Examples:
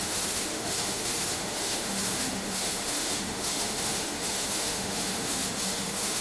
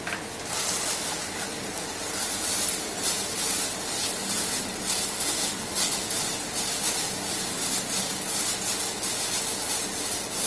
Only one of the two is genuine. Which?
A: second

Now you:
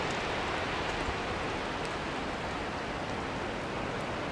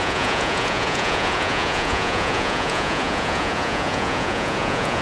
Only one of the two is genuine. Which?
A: first